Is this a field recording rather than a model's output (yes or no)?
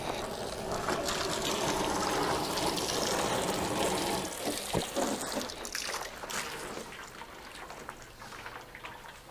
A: yes